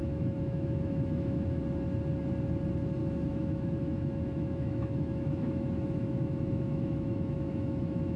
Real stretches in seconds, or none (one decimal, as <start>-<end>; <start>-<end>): 1.6-3.0